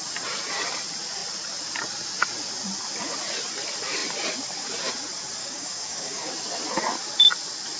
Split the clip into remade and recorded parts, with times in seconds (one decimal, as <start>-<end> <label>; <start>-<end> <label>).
0.0-5.4 recorded; 5.4-6.3 remade; 6.3-7.8 recorded